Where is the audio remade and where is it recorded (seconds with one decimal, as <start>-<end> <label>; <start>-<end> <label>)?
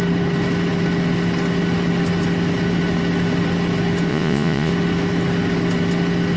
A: 0.0-4.1 recorded; 4.1-4.7 remade; 4.7-6.4 recorded